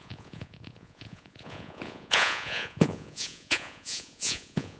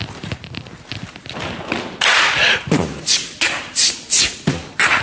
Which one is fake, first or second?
first